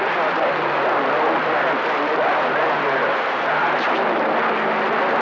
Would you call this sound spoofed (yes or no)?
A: no